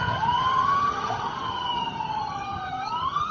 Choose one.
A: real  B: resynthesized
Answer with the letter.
B